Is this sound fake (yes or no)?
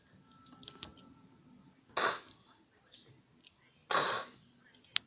no